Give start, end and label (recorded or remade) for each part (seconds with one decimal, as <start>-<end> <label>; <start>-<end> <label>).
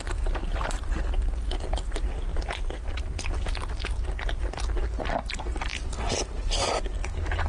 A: 0.0-7.5 recorded